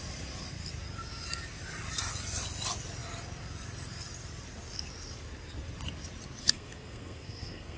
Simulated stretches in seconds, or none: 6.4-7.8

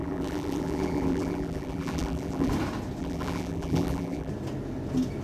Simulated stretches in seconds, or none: 0.0-2.5; 3.0-4.3

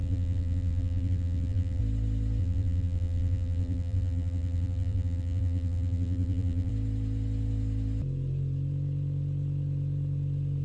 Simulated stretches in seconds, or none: 0.0-1.8; 2.4-6.7

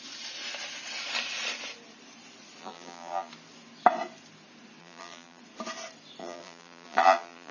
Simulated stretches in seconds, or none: 2.6-3.3; 4.8-5.4; 6.2-7.5

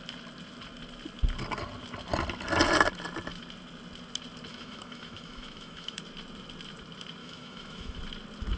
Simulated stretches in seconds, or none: 4.5-6.0; 7.2-8.0

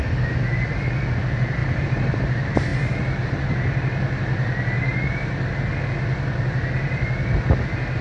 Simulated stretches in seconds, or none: 1.6-2.2; 2.7-3.5; 4.9-5.5

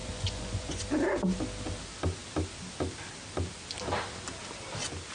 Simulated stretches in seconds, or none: 0.0-0.8